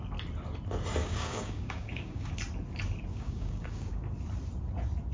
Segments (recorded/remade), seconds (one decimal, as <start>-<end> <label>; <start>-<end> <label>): 0.0-1.0 recorded; 1.0-2.3 remade; 2.3-3.1 recorded; 3.1-4.0 remade; 4.0-5.1 recorded